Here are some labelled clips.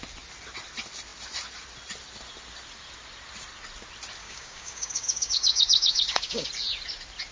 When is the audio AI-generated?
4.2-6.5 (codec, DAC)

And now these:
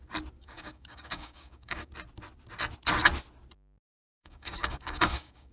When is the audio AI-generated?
0.4-1.9 (codec, DAC); 4.1-5.5

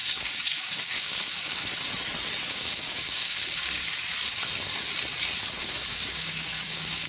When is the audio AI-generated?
0.0-1.6 (codec, DAC); 2.5-3.8; 5.9-7.1

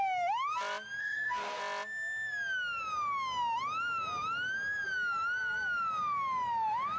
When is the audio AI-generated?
1.0-1.6 (codec, DAC)

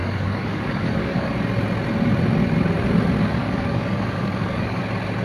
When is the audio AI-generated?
0.0-1.3 (codec, DAC); 3.2-4.8

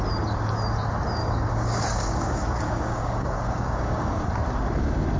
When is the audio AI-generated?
1.2-4.3 (codec, DAC)

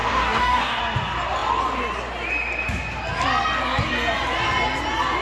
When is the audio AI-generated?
0.0-0.8 (codec, DAC)